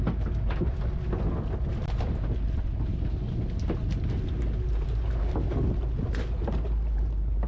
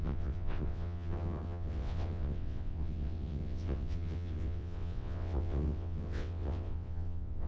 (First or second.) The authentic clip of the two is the first